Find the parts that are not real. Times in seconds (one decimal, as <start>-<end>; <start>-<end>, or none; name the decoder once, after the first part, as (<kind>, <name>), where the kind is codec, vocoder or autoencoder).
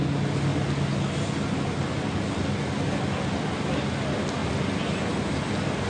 none